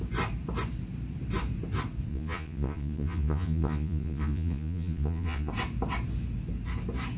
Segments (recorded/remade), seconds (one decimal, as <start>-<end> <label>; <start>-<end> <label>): 0.0-2.1 recorded; 2.1-5.5 remade; 5.5-7.2 recorded